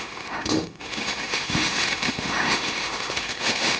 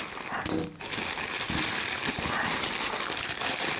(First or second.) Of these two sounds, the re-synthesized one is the first